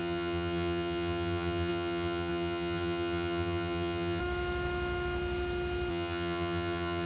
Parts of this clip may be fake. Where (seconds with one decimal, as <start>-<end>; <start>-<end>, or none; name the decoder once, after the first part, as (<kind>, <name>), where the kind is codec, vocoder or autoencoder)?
0.0-4.2 (vocoder, HiFi-GAN); 5.9-7.1